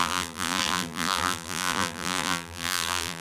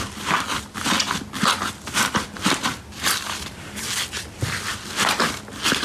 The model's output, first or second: first